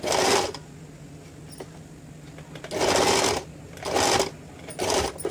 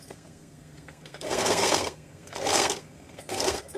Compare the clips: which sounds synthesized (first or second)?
second